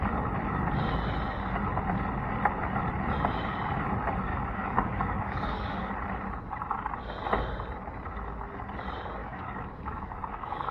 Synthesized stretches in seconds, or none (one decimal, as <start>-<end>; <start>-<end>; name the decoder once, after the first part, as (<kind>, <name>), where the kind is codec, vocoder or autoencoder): 4.3-5.9 (codec, DAC); 9.2-10.7